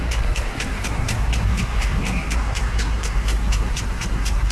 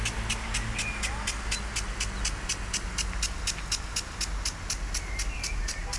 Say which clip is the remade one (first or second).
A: first